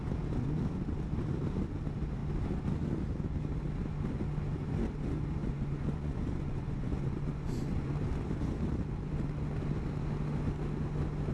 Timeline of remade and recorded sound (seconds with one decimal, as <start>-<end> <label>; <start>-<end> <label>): 0.0-5.4 recorded; 5.4-7.9 remade; 7.9-11.3 recorded